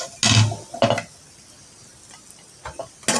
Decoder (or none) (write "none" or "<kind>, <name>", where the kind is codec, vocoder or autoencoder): none